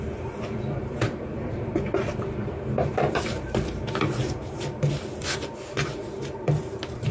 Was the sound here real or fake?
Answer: fake